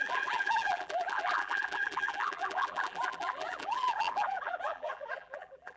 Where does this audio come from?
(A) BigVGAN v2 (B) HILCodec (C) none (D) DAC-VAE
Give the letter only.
A